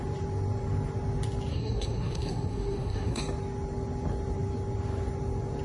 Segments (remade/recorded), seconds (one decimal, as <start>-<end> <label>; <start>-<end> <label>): 0.0-1.5 recorded; 1.5-3.2 remade; 3.2-5.6 recorded